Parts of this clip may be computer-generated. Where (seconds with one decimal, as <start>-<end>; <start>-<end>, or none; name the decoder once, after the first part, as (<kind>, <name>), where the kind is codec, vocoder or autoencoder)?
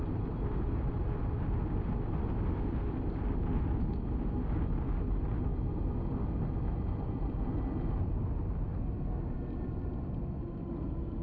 none